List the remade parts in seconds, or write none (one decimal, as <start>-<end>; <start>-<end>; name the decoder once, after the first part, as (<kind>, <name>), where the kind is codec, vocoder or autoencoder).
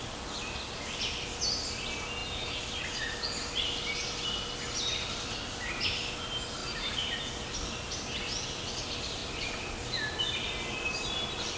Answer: none